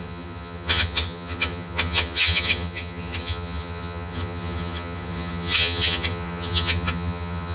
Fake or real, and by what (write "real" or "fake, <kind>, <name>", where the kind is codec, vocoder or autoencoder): fake, vocoder, HiFi-GAN